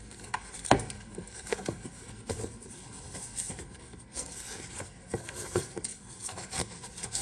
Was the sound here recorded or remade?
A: remade